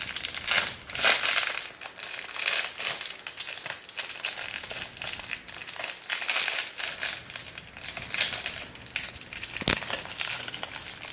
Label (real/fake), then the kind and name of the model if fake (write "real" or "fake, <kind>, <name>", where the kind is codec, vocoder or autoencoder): real